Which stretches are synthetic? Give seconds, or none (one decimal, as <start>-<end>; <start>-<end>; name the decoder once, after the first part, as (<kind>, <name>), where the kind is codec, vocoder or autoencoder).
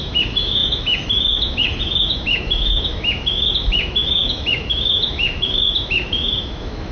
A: 0.0-6.9 (autoencoder, DAC-VAE)